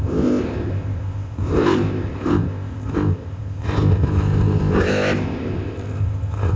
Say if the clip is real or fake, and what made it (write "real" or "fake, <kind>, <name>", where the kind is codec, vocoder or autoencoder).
fake, codec, ZipCodec